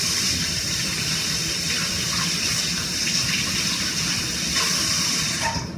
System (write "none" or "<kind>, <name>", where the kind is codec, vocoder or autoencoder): none